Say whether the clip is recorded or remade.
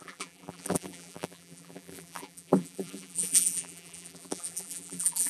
remade